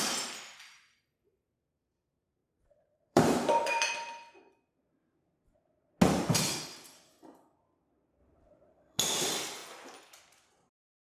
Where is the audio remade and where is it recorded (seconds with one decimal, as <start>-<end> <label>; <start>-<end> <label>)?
0.0-2.4 recorded; 2.4-3.9 remade; 3.9-8.2 recorded; 8.2-9.0 remade; 9.0-11.2 recorded